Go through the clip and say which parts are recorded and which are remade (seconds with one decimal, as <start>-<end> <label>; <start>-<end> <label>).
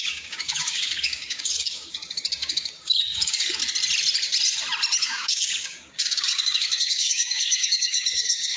0.0-3.6 remade; 3.6-5.0 recorded; 5.0-8.6 remade